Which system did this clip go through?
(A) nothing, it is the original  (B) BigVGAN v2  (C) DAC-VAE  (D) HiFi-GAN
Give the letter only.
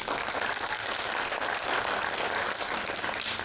A